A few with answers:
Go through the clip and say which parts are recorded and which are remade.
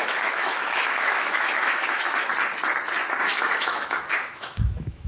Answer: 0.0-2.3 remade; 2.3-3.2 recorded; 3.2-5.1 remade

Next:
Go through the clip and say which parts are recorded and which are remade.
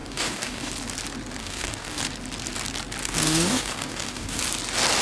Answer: 0.0-0.7 remade; 0.7-1.4 recorded; 1.4-2.0 remade; 2.0-3.0 recorded; 3.0-4.4 remade; 4.4-5.0 recorded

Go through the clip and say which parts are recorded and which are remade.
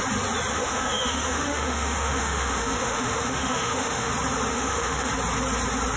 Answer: 0.0-0.5 recorded; 0.5-4.1 remade; 4.1-4.5 recorded; 4.5-5.1 remade; 5.1-6.0 recorded